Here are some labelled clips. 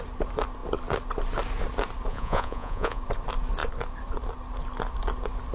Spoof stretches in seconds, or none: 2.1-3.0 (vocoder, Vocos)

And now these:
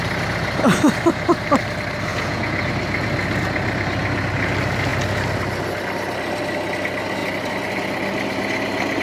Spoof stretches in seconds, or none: 2.1-2.7 (vocoder, Vocos)

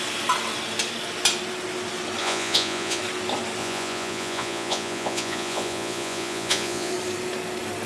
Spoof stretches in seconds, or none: 2.2-3.0 (vocoder, Vocos); 3.6-6.9

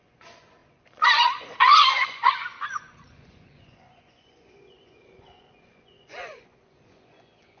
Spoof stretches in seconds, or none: 0.0-7.6 (vocoder, Vocos)

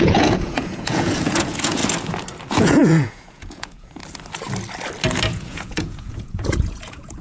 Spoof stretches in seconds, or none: 0.0-1.8 (vocoder, Vocos); 2.5-4.0; 5.3-7.2

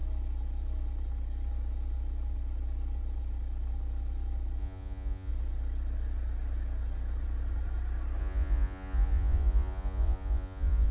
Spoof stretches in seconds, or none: 4.6-5.3 (vocoder, Vocos); 8.2-10.9